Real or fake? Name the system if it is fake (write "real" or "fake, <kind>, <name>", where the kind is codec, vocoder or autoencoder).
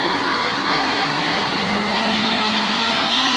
fake, codec, SNAC